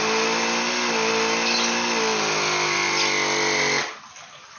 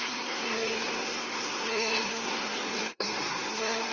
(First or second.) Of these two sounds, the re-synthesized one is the second